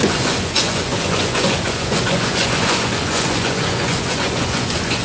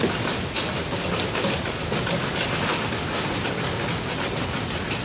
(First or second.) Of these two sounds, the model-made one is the first